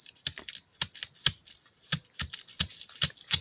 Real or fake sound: real